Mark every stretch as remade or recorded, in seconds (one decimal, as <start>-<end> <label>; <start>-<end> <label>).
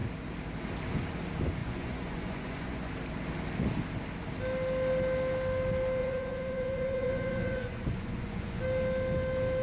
0.0-1.6 recorded; 1.6-2.9 remade; 2.9-6.0 recorded; 6.0-8.6 remade; 8.6-9.6 recorded